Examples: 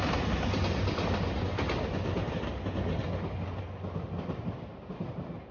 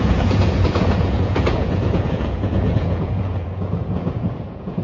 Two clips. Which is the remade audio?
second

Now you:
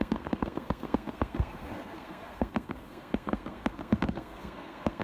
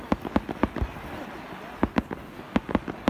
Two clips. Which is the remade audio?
first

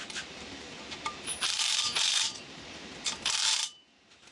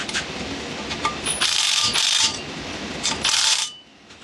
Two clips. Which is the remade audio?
first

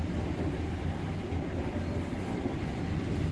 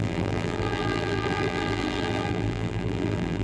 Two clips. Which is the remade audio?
second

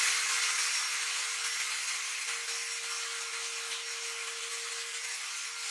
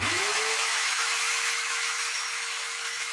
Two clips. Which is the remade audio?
second